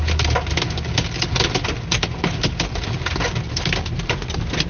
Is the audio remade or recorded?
recorded